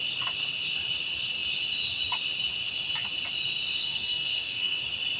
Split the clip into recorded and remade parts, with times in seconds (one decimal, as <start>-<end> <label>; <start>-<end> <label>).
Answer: 0.0-3.8 recorded; 3.8-4.8 remade; 4.8-5.2 recorded